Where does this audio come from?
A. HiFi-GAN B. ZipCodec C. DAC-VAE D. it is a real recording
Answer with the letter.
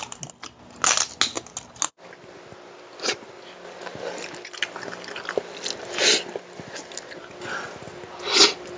D